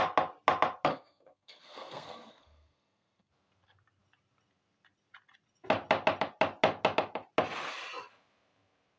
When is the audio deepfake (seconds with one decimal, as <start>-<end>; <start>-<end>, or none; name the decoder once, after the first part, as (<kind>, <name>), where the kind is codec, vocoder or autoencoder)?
0.9-3.3 (codec, SNAC)